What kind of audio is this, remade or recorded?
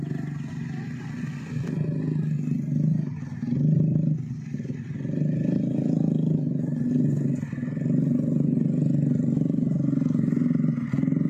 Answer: recorded